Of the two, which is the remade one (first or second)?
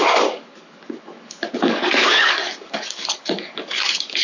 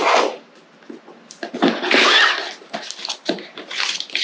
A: first